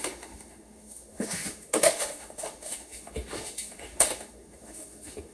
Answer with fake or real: fake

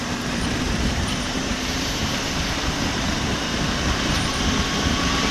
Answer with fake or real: fake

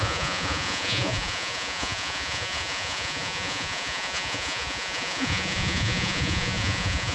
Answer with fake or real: fake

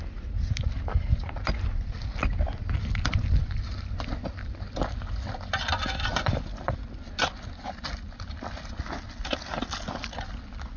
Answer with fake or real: real